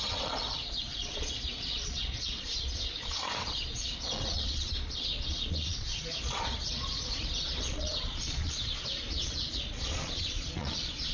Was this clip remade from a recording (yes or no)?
yes